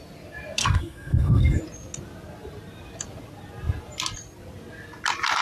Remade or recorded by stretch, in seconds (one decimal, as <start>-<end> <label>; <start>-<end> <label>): 0.0-0.6 recorded; 0.6-1.6 remade; 1.6-5.4 recorded